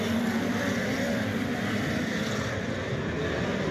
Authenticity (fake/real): fake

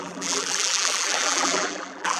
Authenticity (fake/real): fake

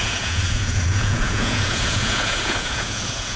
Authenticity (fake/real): fake